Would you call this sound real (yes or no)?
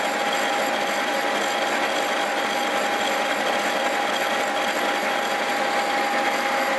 yes